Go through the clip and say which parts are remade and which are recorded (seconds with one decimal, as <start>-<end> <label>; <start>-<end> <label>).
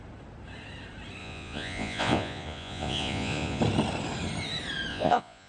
0.0-1.2 recorded; 1.2-3.6 remade; 3.6-4.9 recorded; 4.9-5.5 remade